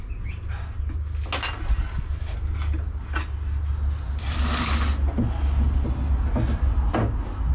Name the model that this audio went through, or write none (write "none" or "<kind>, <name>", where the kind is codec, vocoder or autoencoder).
none